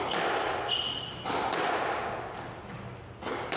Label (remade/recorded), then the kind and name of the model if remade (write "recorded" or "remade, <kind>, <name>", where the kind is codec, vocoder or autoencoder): recorded